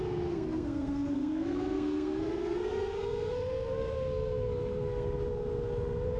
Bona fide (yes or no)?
no